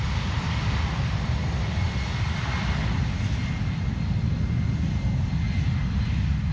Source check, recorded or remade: recorded